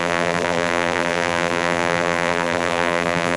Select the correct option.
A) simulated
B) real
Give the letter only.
A